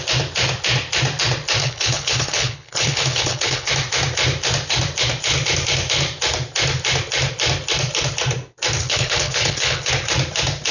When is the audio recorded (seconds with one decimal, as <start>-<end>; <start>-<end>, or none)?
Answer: 0.0-1.6; 3.7-8.8; 9.9-10.7